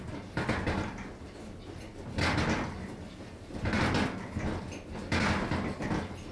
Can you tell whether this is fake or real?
real